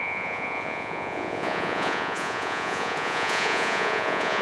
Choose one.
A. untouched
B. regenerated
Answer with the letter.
B